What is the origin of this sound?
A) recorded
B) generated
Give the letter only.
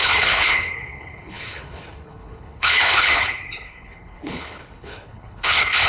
B